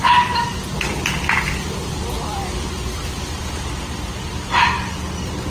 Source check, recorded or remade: recorded